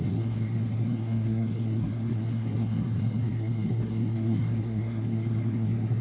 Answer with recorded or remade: remade